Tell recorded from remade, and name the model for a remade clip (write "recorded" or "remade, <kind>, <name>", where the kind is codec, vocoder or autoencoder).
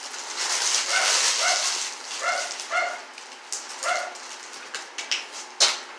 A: recorded